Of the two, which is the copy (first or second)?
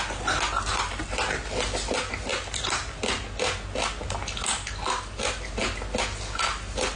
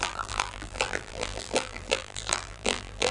second